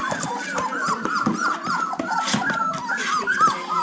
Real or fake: real